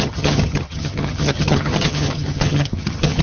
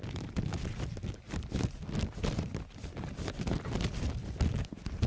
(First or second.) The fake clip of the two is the first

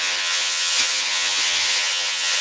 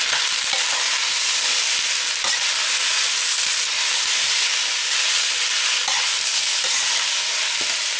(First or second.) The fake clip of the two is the first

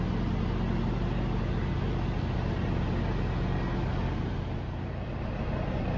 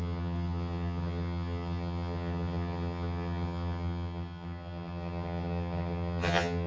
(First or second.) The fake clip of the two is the second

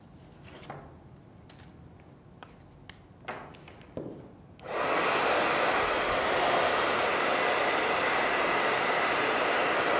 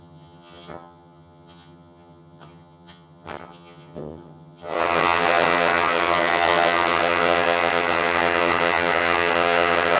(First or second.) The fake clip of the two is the second